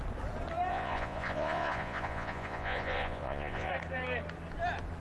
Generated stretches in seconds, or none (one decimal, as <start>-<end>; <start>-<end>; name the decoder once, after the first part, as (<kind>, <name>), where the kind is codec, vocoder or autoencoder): 0.7-3.7 (vocoder, Vocos)